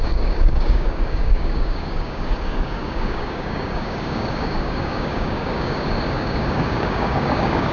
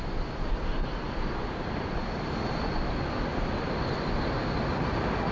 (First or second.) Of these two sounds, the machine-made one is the first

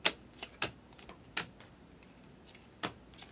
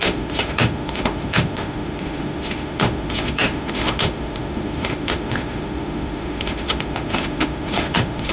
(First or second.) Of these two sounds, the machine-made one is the second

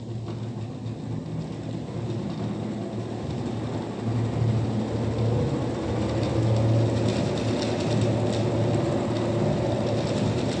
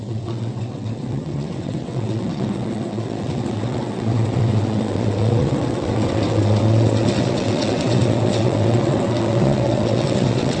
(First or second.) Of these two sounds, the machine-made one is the second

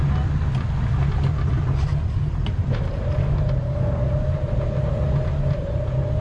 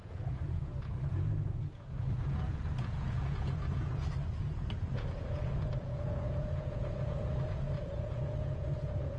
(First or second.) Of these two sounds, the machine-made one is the second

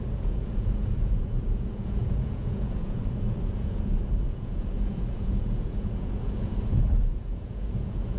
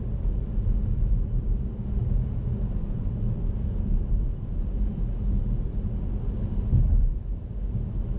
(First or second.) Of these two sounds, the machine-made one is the first